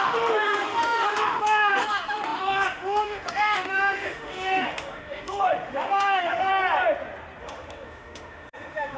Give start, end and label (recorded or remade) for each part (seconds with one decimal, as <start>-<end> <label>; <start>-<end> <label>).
0.0-6.5 remade; 6.5-7.4 recorded; 7.4-9.0 remade